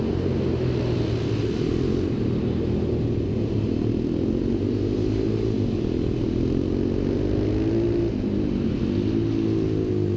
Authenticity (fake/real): real